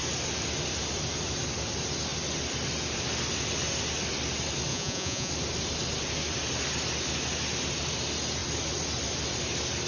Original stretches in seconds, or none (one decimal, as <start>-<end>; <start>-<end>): 0.0-4.7; 5.3-9.9